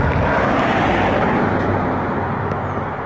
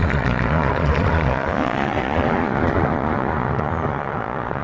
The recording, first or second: first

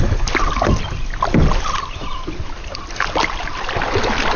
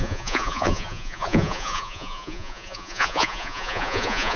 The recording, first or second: first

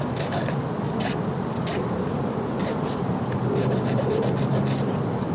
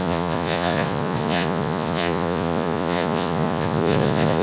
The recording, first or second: first